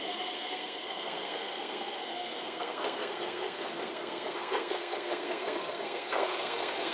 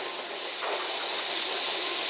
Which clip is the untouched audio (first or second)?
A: second